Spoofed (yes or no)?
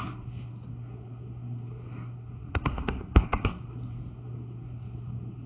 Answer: yes